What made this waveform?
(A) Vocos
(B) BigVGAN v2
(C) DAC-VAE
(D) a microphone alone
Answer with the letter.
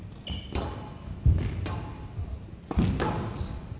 D